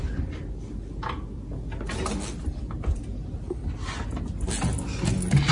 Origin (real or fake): real